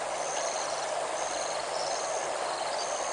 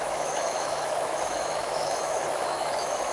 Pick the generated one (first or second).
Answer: second